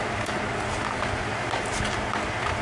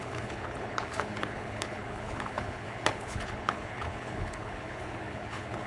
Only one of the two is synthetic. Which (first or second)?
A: second